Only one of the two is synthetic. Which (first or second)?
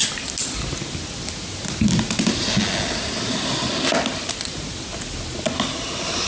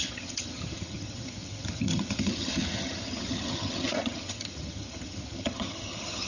second